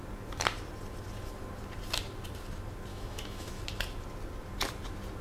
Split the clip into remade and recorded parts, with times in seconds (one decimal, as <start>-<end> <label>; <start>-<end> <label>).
0.0-2.9 recorded; 2.9-3.6 remade; 3.6-5.2 recorded